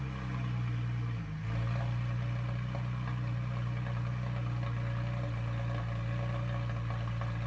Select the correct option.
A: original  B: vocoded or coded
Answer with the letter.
A